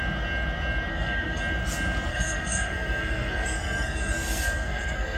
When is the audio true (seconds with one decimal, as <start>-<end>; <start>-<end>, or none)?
0.0-0.9; 1.4-2.1